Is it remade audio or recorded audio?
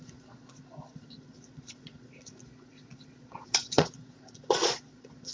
remade